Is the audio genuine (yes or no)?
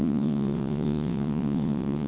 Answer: no